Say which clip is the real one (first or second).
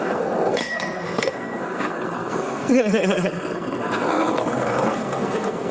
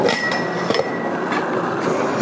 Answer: second